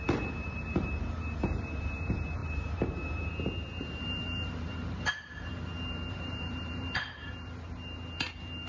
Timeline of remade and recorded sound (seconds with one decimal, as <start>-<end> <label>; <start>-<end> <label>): 0.0-5.5 remade; 5.5-6.1 recorded; 6.1-7.2 remade; 7.2-8.7 recorded